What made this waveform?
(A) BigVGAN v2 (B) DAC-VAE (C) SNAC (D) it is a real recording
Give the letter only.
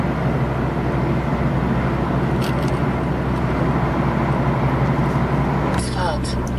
D